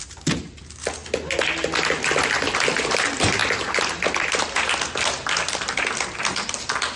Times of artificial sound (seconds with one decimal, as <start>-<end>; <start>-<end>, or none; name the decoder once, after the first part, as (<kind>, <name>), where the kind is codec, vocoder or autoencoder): 3.4-5.8 (vocoder, BigVGAN v2)